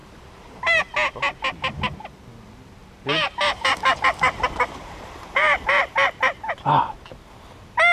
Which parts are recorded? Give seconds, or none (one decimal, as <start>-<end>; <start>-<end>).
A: 0.8-2.8; 6.8-7.9